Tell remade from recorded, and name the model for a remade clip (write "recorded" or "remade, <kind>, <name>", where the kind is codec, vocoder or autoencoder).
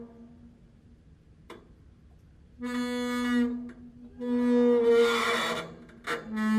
recorded